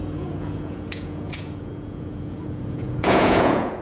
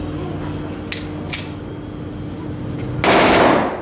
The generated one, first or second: first